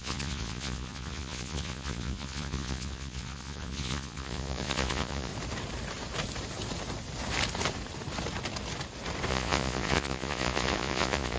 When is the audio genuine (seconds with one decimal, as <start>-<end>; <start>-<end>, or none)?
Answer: 5.3-9.3

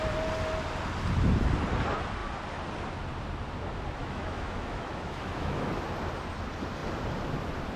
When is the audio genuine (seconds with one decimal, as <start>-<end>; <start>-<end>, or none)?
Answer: 0.0-4.0; 5.7-7.8

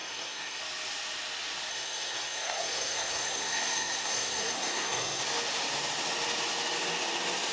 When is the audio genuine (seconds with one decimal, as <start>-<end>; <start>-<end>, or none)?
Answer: 0.6-1.7; 5.2-7.5